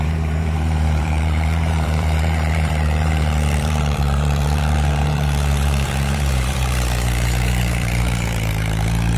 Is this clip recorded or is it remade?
remade